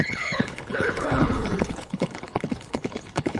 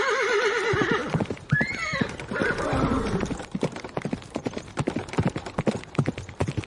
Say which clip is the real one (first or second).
second